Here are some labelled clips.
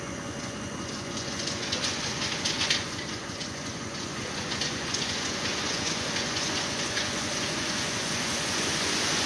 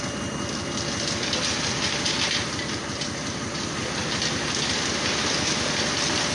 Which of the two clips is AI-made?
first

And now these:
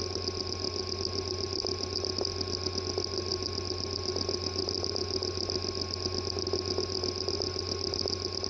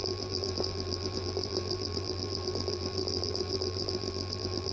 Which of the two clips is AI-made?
second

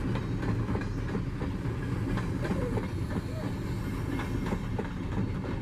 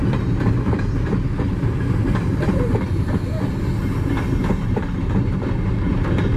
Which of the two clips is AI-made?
second